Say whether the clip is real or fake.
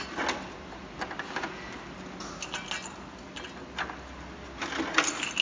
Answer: real